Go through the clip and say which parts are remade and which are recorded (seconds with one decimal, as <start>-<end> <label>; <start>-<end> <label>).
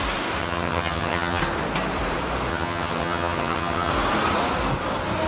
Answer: 0.0-0.4 recorded; 0.4-1.4 remade; 1.4-2.5 recorded; 2.5-3.9 remade; 3.9-5.3 recorded